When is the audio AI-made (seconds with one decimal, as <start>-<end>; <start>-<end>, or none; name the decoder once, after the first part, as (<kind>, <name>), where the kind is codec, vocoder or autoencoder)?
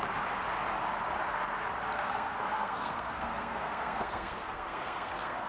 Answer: 1.9-5.5 (codec, SNAC)